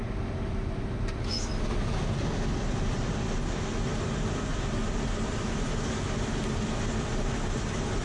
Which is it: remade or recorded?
recorded